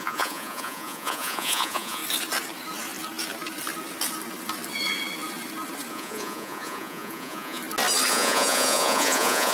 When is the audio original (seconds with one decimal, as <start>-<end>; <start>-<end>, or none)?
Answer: 2.0-5.9; 7.6-8.1